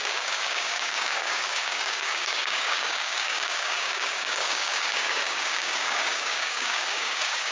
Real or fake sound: fake